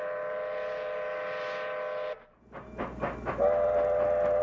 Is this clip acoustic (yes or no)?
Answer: yes